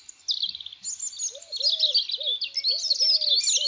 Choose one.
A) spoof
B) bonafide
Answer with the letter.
B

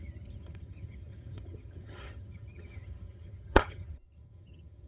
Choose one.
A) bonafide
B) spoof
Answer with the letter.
B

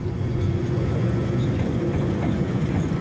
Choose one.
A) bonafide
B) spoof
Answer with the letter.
B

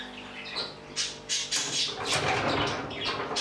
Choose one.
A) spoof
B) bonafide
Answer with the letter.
B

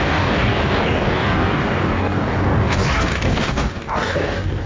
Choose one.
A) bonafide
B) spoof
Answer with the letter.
B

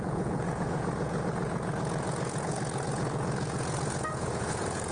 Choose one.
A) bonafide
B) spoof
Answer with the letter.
B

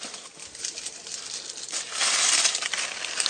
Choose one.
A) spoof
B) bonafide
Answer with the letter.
B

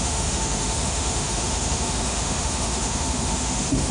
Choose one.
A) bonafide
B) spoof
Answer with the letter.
B